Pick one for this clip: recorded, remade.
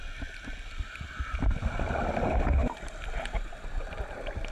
recorded